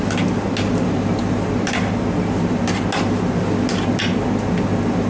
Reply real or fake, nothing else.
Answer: real